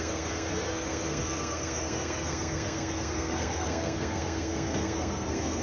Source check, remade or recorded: remade